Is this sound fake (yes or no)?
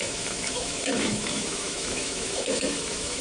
yes